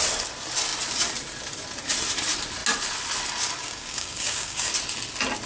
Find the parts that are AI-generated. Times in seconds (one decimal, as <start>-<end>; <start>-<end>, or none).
3.6-4.7